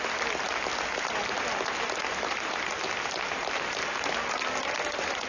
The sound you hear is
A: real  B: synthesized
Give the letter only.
A